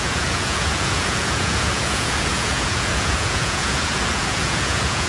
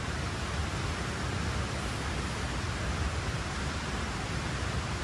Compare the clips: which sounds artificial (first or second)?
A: first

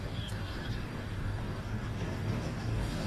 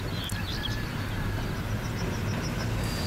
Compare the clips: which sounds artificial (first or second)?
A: first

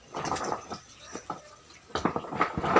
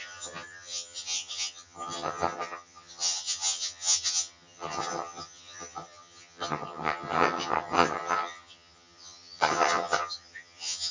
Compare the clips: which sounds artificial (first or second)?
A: second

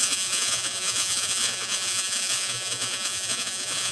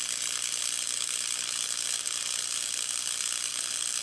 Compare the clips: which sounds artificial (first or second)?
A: first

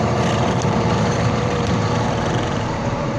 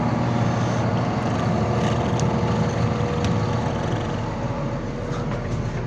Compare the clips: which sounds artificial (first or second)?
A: first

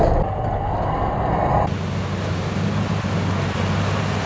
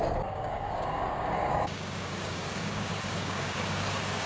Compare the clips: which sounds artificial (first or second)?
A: second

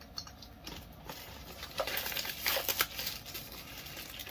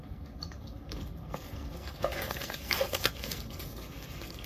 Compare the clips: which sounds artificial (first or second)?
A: second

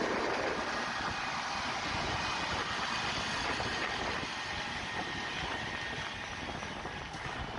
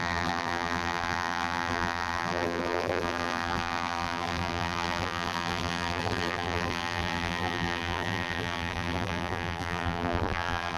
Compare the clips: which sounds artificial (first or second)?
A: second